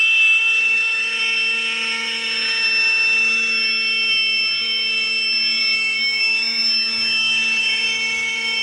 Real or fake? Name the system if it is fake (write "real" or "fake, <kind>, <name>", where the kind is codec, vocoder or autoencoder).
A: fake, autoencoder, DAC-VAE